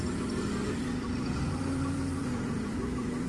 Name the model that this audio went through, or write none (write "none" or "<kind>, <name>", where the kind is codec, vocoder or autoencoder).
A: vocoder, BigVGAN v2